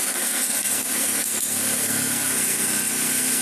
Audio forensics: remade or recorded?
remade